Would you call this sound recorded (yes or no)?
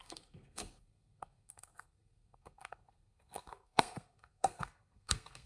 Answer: no